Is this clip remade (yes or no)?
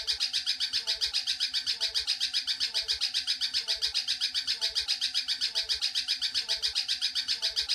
no